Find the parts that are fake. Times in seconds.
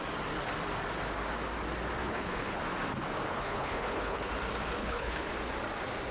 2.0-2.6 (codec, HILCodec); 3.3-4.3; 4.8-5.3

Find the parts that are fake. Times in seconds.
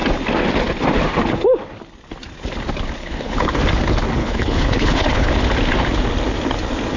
3.0-3.6 (codec, HILCodec); 4.2-5.3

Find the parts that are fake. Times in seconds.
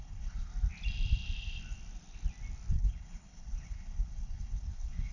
0.0-0.5 (codec, HILCodec); 2.7-5.1